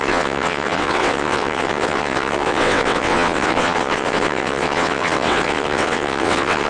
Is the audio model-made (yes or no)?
yes